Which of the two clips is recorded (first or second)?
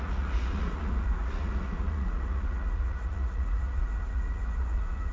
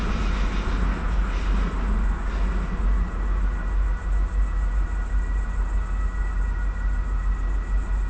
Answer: second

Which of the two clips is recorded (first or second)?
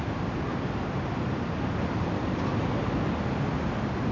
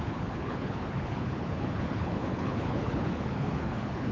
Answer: first